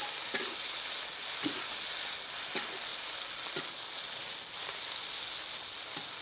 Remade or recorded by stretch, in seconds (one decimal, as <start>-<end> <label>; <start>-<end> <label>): 0.0-6.2 recorded